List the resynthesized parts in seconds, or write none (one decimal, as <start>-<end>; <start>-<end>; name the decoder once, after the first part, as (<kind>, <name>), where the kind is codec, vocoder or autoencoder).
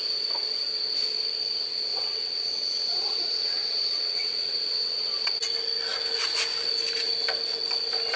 1.9-5.3 (vocoder, WaveNeXt)